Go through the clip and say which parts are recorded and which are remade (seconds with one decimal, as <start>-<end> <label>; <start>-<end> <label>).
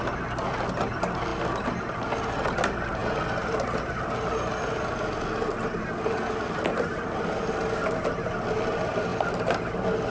0.0-10.1 recorded